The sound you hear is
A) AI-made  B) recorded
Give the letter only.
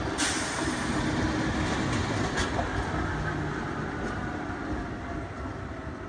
B